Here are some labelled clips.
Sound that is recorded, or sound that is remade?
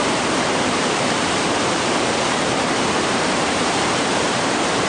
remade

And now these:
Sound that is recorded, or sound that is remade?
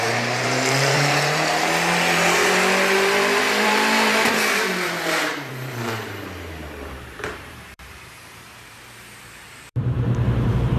remade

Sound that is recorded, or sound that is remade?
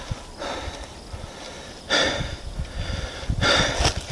recorded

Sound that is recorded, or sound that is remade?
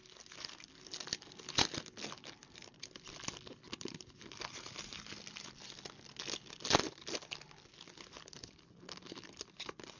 recorded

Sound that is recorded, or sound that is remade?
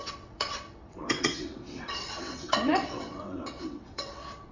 remade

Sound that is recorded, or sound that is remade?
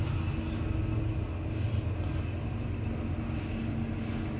recorded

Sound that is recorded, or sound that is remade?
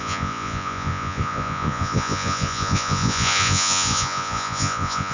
remade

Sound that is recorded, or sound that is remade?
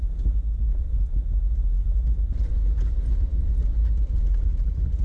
recorded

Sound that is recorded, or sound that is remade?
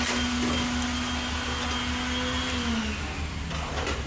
recorded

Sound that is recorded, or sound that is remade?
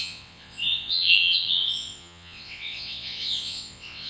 remade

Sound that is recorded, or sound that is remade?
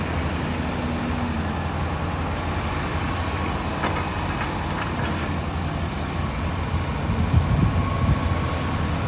recorded